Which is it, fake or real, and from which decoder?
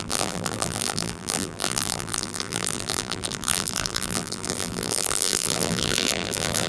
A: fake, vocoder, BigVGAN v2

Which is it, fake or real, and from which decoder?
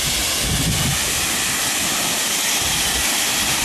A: real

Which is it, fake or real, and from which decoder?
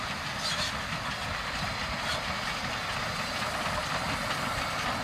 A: real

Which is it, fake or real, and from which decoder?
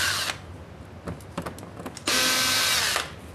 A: real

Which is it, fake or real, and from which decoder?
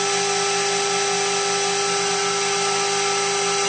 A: real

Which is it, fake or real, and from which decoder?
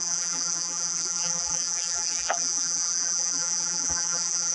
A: fake, vocoder, BigVGAN v2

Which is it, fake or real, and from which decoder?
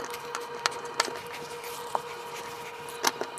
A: real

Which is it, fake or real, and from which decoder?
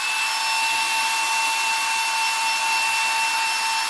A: real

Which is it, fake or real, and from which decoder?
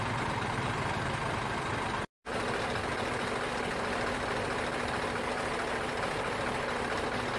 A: real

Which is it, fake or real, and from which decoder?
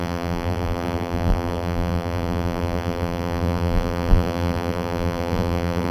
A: fake, vocoder, BigVGAN v2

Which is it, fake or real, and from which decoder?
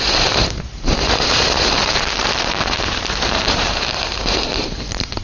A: fake, vocoder, BigVGAN v2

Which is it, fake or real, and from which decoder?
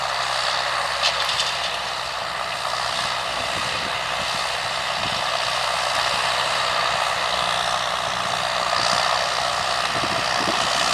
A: real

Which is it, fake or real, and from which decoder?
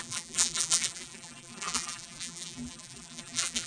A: fake, vocoder, BigVGAN v2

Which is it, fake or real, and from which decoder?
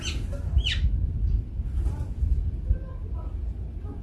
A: real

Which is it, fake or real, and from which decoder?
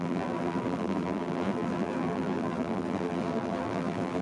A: fake, vocoder, BigVGAN v2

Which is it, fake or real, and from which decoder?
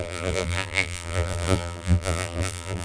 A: fake, vocoder, BigVGAN v2